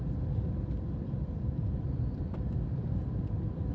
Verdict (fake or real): fake